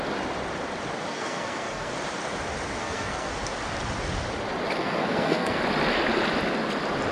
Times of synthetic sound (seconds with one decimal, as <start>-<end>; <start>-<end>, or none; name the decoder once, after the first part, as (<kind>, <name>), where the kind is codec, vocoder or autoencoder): 1.1-1.9 (codec, SNAC); 2.8-3.3; 4.8-5.6